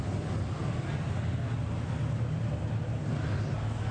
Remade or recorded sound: recorded